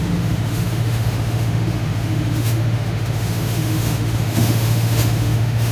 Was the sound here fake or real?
fake